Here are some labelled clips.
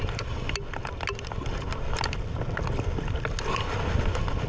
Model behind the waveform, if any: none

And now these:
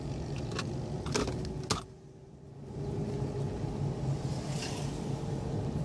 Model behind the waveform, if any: none